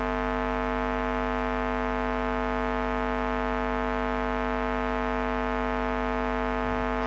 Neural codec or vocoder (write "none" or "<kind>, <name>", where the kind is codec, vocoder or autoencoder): none